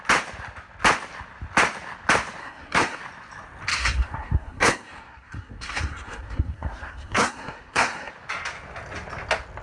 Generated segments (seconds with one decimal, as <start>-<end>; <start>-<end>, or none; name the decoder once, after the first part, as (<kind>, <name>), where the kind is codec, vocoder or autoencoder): 2.4-3.0 (codec, SNAC); 3.7-8.1